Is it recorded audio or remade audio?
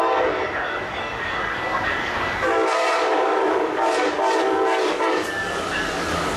remade